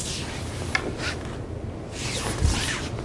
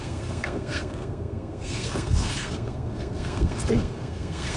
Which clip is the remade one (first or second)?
second